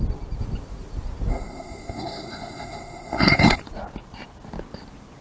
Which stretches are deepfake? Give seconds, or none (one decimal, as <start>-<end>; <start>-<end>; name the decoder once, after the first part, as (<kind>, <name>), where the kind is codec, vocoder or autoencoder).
1.3-3.6 (codec, SNAC)